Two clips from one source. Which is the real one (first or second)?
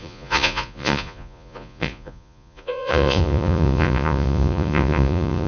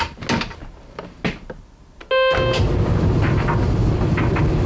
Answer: second